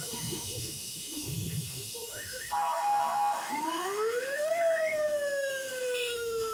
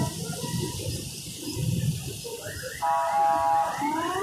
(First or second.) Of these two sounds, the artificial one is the first